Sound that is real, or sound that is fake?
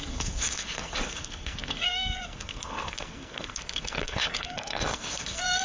fake